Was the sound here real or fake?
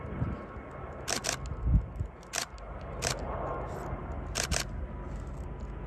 real